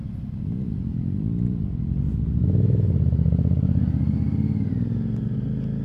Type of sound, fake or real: real